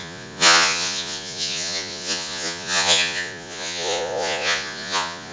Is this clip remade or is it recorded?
remade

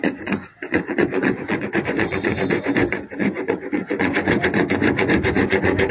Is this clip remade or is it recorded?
remade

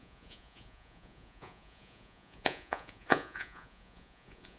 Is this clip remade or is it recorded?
remade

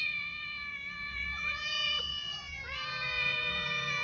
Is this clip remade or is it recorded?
remade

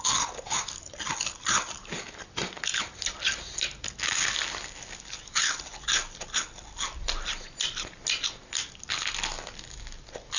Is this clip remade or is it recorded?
recorded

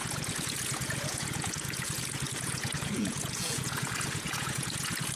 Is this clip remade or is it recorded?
remade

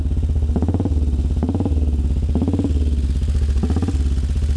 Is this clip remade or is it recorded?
recorded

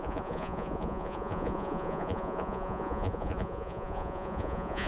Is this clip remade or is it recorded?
remade